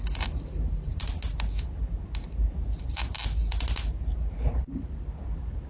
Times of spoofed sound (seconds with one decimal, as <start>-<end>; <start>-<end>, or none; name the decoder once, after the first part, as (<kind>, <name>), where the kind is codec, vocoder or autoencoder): none